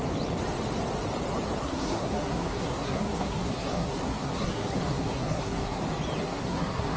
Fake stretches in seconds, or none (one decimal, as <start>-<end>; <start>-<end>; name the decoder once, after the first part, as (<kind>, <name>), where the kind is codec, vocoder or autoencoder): 1.6-5.8 (codec, SNAC); 6.2-7.0